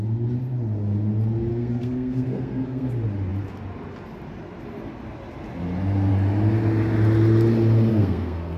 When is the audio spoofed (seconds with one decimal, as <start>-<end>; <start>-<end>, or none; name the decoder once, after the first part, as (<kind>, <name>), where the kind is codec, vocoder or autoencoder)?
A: 1.5-2.9 (codec, SNAC); 7.9-8.6